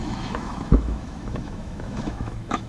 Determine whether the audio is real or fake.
fake